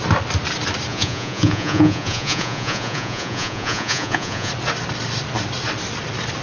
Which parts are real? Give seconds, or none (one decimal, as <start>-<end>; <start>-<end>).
0.0-0.9; 4.5-6.4